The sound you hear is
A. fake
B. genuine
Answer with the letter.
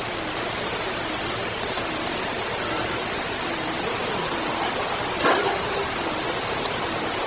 B